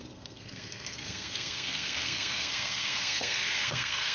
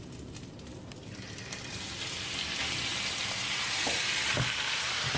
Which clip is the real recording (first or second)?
second